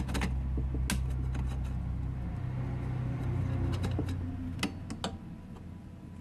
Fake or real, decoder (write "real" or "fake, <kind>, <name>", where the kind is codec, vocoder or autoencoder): real